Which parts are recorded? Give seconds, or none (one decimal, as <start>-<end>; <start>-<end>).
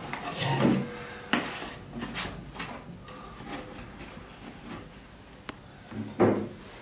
0.0-6.8